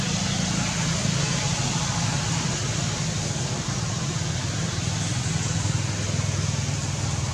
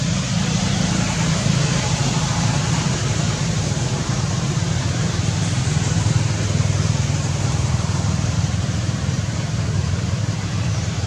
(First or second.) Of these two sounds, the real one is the first